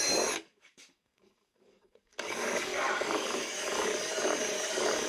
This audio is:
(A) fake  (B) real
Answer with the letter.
A